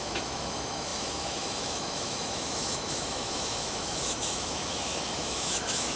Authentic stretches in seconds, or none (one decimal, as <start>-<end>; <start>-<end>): none